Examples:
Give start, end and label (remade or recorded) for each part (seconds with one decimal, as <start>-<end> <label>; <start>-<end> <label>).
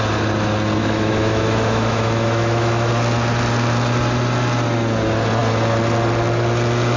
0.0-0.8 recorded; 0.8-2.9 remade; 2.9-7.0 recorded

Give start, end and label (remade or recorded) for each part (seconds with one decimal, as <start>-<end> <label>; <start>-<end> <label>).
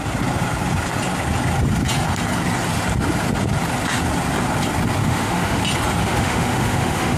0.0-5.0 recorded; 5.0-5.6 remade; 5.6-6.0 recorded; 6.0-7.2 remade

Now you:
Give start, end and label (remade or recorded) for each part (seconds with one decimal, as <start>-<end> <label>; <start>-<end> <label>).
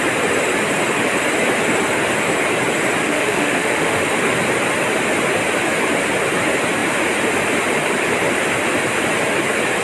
0.0-3.0 recorded; 3.0-4.0 remade; 4.0-9.8 recorded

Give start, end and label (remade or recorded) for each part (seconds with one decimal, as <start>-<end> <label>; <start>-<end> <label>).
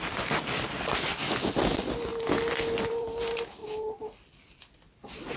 0.0-5.4 recorded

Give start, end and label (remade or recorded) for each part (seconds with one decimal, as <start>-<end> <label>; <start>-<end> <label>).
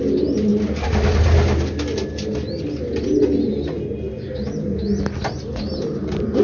0.0-6.4 recorded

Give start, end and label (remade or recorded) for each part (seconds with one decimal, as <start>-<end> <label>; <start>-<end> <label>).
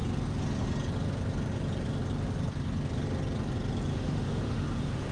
0.0-3.9 recorded; 3.9-5.1 remade